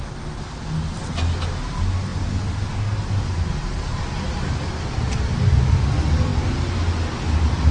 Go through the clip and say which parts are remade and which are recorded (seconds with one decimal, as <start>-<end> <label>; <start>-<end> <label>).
0.0-7.7 recorded